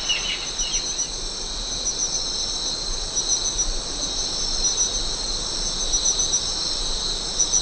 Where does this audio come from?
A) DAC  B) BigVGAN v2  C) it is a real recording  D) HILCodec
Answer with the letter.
C